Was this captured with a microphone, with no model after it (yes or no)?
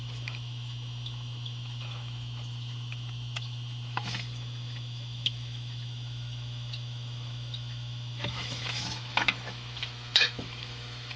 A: no